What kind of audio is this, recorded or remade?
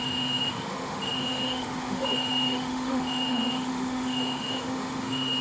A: remade